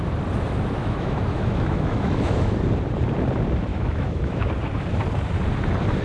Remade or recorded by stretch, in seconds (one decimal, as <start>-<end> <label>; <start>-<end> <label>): 0.0-0.8 recorded; 0.8-2.5 remade; 2.5-3.7 recorded; 3.7-4.5 remade; 4.5-6.0 recorded